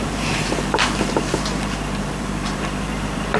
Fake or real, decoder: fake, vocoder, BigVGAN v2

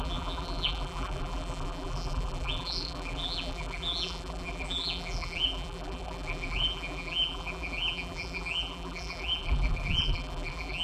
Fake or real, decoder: fake, vocoder, BigVGAN v2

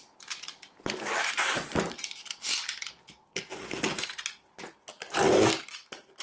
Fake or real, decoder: real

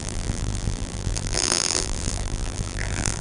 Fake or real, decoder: fake, vocoder, BigVGAN v2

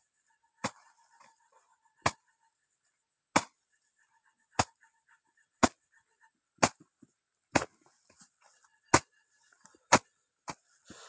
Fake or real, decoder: real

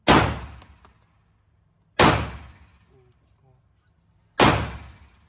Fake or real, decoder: real